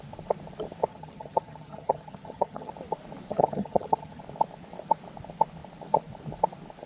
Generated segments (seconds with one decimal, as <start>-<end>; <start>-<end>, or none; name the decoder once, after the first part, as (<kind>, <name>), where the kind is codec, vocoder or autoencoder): 0.9-2.7 (vocoder, HiFi-GAN); 3.3-4.2